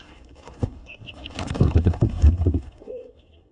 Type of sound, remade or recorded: remade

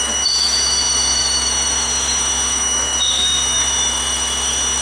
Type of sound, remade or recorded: remade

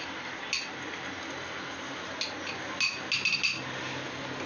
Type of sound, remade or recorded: recorded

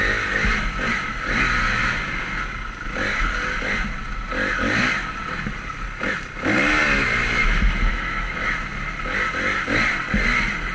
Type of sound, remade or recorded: recorded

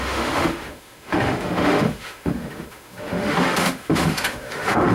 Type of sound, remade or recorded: remade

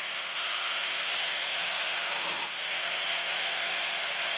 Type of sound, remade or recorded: remade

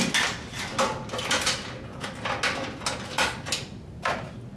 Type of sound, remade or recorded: recorded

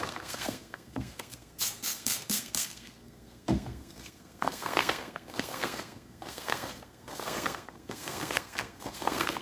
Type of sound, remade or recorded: remade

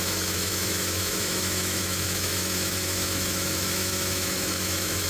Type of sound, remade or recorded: remade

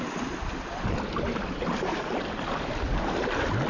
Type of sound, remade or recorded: recorded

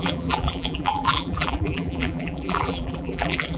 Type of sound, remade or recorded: remade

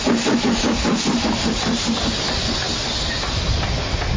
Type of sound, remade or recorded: recorded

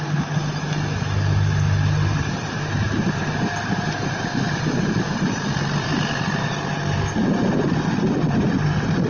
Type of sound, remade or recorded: recorded